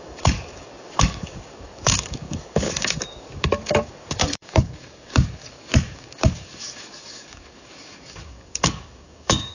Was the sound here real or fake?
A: fake